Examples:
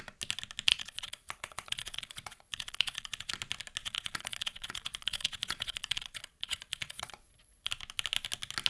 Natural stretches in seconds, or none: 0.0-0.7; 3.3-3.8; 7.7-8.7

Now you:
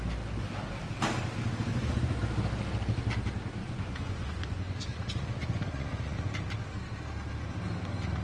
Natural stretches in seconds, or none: 0.0-1.7; 2.2-3.6; 6.3-8.2

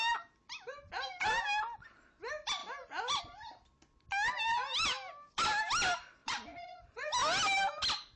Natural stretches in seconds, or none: 0.0-6.2; 7.1-8.2

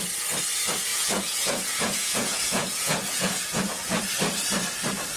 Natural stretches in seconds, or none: 0.0-0.9; 4.0-5.2

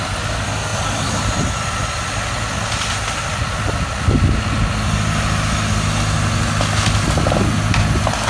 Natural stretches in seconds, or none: 0.0-8.3

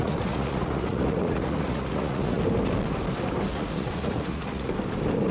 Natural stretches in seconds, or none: 2.4-3.5; 4.7-5.3

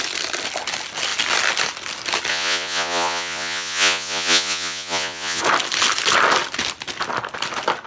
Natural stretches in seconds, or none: 0.0-2.3; 5.4-7.9